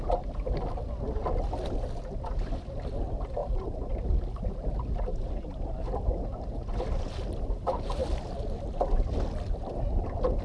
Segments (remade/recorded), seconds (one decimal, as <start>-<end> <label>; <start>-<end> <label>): 0.0-10.4 recorded